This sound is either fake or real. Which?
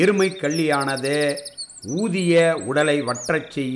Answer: real